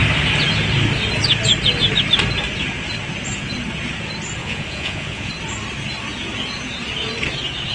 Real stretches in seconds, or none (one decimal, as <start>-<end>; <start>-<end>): 0.0-4.4; 5.3-7.7